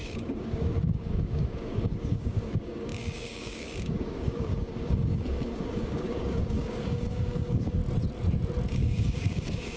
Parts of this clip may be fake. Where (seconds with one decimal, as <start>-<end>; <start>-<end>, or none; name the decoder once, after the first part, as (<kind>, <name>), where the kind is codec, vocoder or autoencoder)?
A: 0.0-7.8 (codec, DAC); 8.7-9.8